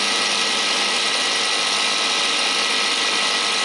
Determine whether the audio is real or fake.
real